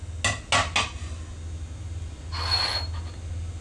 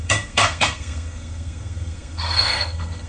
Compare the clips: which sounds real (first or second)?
first